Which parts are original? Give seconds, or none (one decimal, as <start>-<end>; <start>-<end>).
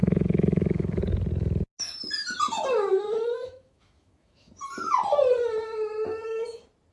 1.0-2.9; 4.5-6.9